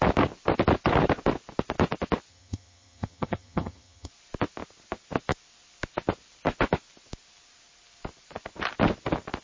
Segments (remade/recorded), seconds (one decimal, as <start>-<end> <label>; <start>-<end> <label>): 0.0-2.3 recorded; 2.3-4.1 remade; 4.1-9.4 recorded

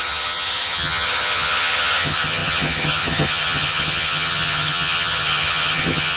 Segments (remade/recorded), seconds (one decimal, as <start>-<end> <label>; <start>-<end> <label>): 0.0-6.2 remade

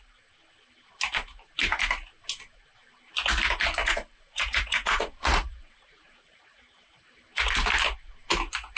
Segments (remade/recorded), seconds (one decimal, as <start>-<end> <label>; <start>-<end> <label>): 0.0-3.8 recorded; 3.8-6.6 remade; 6.6-8.8 recorded

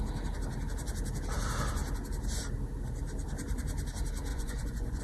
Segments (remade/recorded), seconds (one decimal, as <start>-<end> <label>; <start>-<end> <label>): 0.0-4.3 recorded; 4.3-5.0 remade

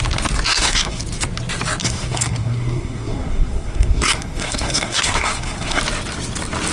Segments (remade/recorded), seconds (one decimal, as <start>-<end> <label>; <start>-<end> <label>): 0.0-0.5 recorded; 0.5-1.0 remade; 1.0-1.8 recorded; 1.8-5.8 remade; 5.8-6.7 recorded

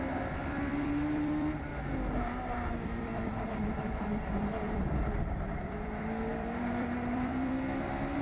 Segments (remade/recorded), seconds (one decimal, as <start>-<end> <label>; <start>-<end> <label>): 0.0-1.7 remade; 1.7-2.5 recorded; 2.5-8.2 remade